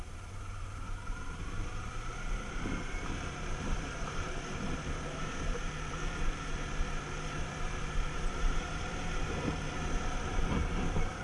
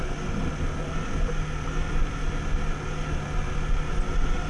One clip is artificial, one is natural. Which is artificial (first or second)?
first